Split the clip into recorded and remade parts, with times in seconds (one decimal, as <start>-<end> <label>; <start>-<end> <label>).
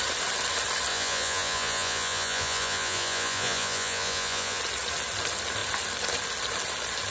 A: 0.0-0.9 recorded; 0.9-4.6 remade; 4.6-7.1 recorded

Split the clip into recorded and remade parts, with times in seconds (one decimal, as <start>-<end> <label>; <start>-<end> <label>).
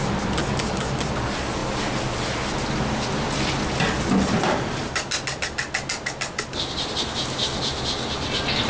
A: 0.0-0.4 recorded; 0.4-1.0 remade; 1.0-8.7 recorded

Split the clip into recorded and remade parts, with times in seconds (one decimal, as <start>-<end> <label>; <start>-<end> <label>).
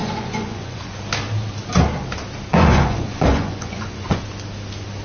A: 0.0-1.0 remade; 1.0-2.5 recorded; 2.5-4.2 remade; 4.2-5.0 recorded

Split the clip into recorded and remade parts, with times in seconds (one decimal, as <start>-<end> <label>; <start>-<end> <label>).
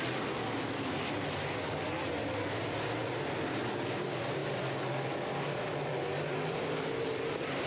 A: 0.0-7.7 recorded